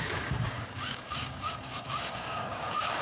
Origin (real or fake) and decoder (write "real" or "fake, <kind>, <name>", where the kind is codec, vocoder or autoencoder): fake, codec, DAC